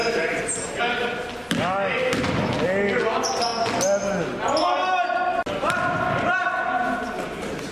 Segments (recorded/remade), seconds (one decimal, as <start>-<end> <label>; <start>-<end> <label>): 0.0-0.8 remade; 0.8-7.7 recorded